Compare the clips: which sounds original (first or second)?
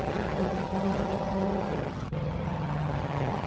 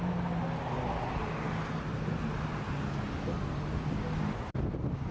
second